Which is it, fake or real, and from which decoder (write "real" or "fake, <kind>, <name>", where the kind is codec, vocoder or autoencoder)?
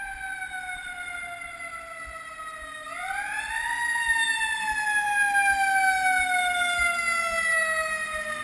real